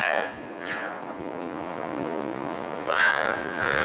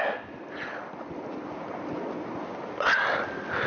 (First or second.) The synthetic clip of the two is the first